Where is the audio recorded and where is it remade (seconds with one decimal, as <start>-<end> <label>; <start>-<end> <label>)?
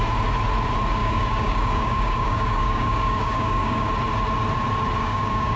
0.0-1.0 recorded; 1.0-3.9 remade; 3.9-5.0 recorded; 5.0-5.6 remade